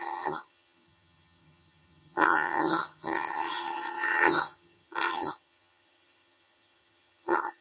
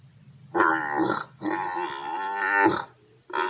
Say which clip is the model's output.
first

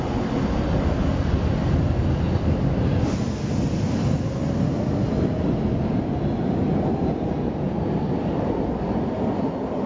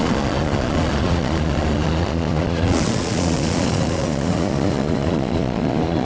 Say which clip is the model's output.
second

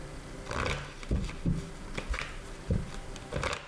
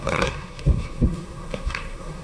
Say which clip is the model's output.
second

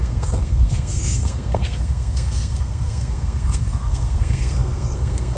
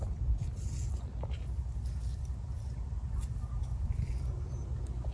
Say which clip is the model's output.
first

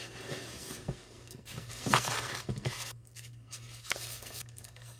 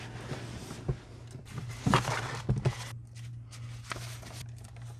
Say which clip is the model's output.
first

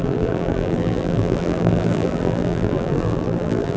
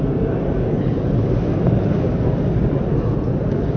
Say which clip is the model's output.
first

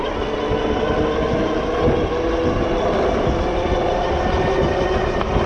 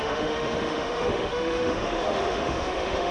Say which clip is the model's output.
second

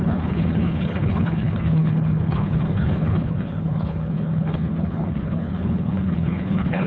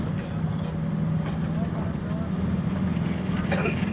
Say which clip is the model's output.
first